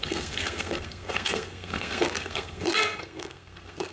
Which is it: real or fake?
fake